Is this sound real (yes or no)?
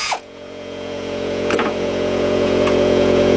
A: no